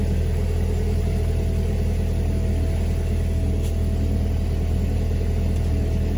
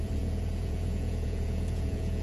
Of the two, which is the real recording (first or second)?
first